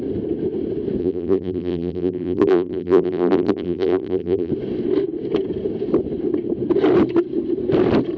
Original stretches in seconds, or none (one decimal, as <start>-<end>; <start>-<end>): 0.0-1.0; 4.5-8.2